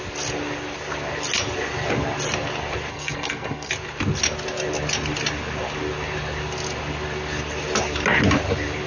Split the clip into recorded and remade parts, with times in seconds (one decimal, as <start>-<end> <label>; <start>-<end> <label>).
0.0-2.9 recorded; 2.9-3.7 remade; 3.7-8.9 recorded